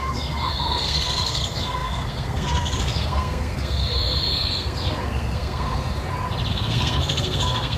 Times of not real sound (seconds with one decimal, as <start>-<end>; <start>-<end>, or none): 0.0-5.8; 6.5-7.8